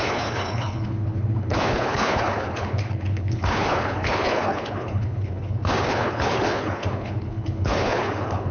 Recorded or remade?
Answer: remade